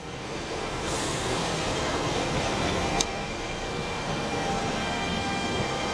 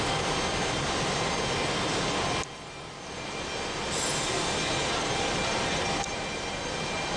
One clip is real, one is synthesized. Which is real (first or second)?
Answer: second